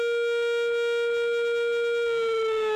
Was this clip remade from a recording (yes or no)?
no